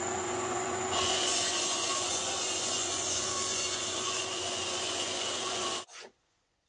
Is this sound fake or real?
fake